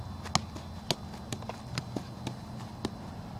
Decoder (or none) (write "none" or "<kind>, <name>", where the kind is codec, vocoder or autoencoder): none